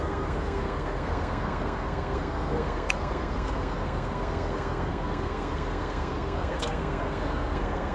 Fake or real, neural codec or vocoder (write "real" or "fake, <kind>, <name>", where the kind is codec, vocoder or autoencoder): fake, codec, SNAC